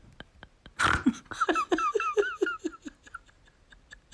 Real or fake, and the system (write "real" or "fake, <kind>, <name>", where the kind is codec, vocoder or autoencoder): real